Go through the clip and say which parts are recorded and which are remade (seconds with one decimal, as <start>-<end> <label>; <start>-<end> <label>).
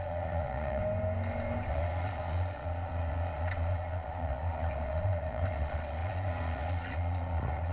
0.0-0.8 remade; 0.8-1.7 recorded; 1.7-7.7 remade